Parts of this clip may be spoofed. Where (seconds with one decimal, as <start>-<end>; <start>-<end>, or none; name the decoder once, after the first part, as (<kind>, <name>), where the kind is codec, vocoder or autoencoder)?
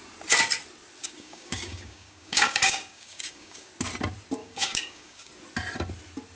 1.0-3.7 (codec, DAC); 4.4-5.3